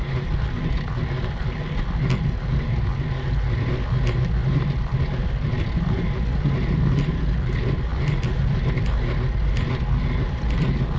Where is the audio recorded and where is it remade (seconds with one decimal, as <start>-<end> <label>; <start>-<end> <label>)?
0.0-11.0 recorded